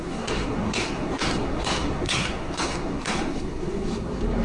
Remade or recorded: remade